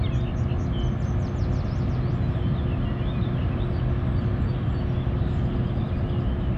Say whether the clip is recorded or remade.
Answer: recorded